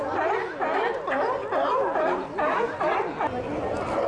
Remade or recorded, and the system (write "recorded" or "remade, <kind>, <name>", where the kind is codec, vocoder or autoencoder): recorded